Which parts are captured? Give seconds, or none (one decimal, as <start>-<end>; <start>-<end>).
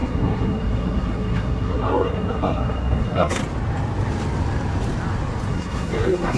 3.4-5.5